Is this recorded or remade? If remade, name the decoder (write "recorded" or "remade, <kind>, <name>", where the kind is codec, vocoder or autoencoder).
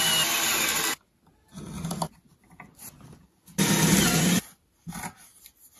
recorded